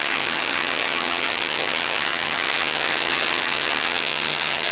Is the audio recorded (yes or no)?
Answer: no